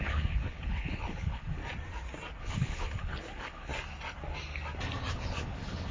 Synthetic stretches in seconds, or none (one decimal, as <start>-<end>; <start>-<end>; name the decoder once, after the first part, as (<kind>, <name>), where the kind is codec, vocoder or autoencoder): 0.0-1.6 (codec, HILCodec); 2.4-3.7; 5.1-5.9